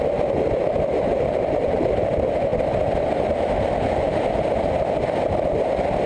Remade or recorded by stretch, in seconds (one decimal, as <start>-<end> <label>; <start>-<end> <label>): 0.0-2.5 recorded; 2.5-3.3 remade; 3.3-6.1 recorded